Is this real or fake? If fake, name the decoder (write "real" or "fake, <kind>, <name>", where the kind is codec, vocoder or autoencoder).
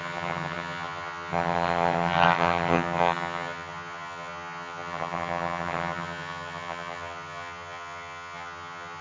fake, vocoder, HiFi-GAN